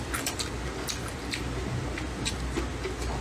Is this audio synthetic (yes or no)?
no